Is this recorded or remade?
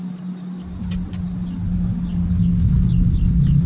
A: recorded